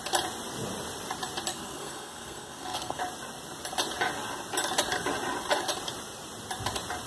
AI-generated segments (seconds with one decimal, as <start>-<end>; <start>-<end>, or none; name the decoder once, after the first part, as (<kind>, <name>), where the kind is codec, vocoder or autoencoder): 1.5-3.0 (codec, SNAC)